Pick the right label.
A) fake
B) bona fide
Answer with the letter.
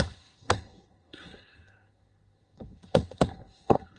A